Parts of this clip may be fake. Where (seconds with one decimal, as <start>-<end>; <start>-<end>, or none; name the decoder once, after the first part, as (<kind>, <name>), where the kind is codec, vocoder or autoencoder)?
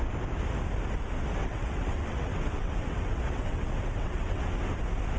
1.4-4.5 (vocoder, WaveNeXt)